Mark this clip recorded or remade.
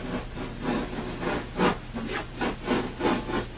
recorded